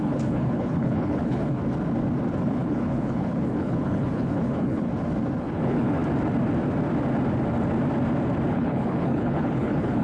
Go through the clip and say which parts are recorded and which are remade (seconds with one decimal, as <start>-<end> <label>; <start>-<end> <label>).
0.0-1.6 remade; 1.6-2.4 recorded; 2.4-4.9 remade; 4.9-5.4 recorded; 5.4-6.0 remade; 6.0-8.5 recorded; 8.5-10.0 remade